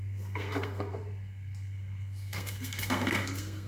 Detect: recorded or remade remade